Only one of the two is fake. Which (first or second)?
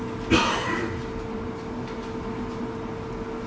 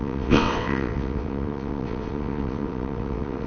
second